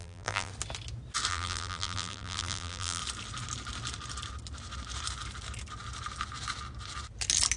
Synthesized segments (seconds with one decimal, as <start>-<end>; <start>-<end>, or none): 0.0-0.5; 1.3-3.0